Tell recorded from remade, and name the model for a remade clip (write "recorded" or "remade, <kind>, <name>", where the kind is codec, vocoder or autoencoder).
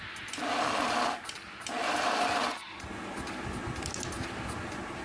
recorded